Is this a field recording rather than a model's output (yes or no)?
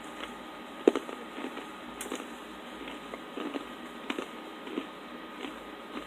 yes